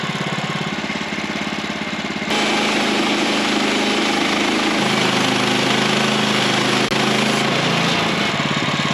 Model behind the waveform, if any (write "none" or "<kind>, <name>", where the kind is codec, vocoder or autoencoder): none